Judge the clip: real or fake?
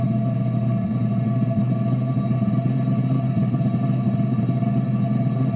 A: real